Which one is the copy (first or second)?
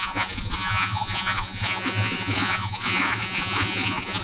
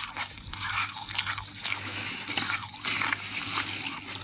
first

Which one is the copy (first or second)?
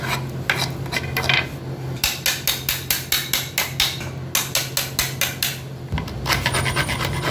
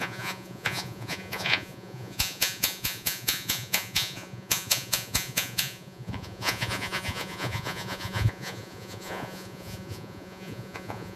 second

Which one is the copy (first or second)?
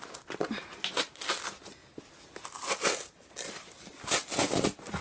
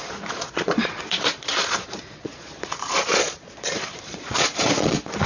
second